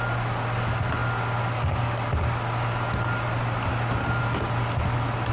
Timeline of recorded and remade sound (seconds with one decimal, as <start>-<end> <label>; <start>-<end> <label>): 0.0-5.3 recorded